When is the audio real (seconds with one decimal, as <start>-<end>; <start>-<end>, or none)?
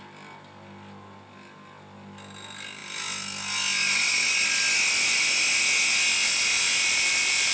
0.0-7.5